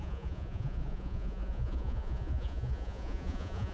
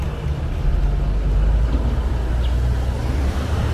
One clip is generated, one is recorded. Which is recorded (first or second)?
second